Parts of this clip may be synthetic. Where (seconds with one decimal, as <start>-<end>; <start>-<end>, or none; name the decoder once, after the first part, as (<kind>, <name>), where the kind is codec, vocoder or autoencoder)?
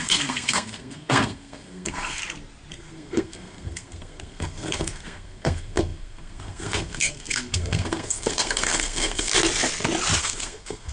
0.0-2.2 (codec, SNAC); 2.7-9.3; 10.2-10.9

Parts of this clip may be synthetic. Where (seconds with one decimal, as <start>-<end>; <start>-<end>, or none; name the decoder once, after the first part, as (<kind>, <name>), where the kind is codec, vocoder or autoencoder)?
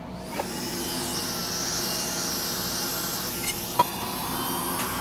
none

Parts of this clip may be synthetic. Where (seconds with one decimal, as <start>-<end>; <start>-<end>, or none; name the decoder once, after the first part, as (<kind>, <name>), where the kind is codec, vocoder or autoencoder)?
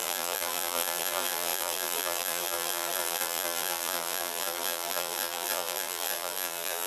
0.0-6.9 (vocoder, BigVGAN v2)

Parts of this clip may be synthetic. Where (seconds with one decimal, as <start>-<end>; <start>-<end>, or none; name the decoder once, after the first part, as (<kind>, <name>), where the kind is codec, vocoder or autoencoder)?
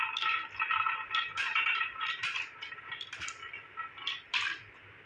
1.4-2.9 (vocoder, BigVGAN v2)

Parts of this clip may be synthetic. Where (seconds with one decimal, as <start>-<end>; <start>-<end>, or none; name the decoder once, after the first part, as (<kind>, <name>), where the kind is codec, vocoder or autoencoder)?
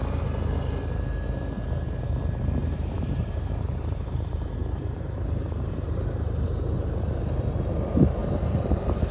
2.6-6.7 (vocoder, BigVGAN v2); 8.2-9.1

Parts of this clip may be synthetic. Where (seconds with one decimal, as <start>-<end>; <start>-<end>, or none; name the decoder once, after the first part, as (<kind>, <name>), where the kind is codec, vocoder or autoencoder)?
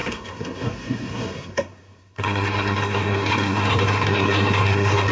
0.0-5.1 (codec, SNAC)